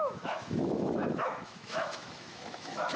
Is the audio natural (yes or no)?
no